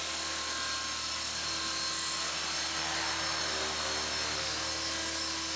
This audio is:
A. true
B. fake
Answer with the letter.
A